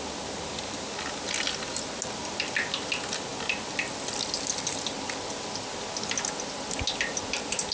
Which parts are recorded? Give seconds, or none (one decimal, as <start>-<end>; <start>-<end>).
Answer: 0.0-7.7